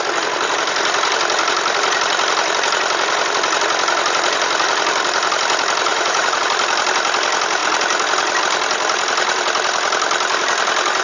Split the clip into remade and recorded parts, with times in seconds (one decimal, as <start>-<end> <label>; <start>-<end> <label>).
0.0-5.9 recorded; 5.9-6.4 remade; 6.4-11.0 recorded